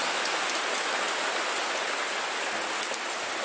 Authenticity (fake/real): real